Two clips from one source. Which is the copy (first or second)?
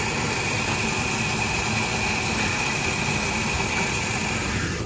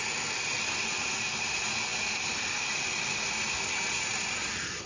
first